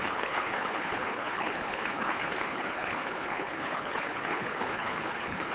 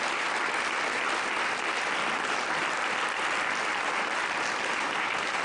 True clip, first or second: second